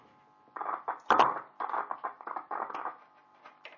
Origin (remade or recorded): recorded